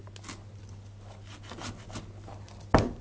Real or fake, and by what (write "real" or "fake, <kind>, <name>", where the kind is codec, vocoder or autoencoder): real